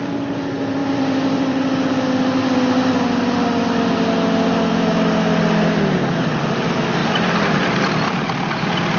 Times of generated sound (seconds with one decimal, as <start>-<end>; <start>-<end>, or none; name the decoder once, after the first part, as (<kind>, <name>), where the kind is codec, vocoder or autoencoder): 0.8-1.6 (vocoder, BigVGAN v2); 7.0-9.0